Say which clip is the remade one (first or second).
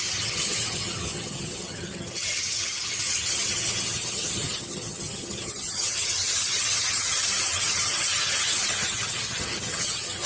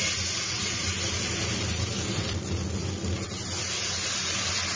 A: first